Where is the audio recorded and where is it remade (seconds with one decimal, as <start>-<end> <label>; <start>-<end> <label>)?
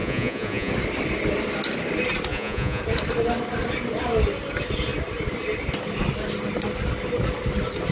0.0-0.7 remade; 0.7-2.3 recorded; 2.3-2.8 remade; 2.8-7.9 recorded